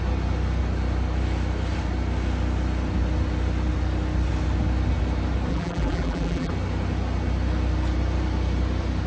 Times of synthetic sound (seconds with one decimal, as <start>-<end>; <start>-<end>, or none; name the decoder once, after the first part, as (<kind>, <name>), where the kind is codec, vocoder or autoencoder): 5.5-6.5 (vocoder, BigVGAN v2)